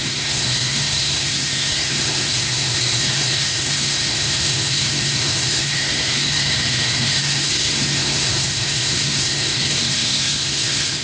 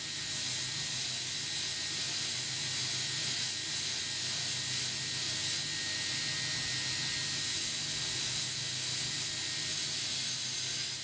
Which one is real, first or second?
second